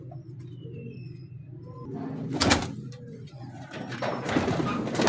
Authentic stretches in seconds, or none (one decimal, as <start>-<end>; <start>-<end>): 0.0-5.1